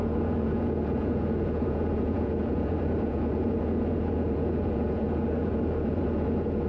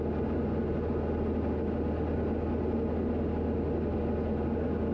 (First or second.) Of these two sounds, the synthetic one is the first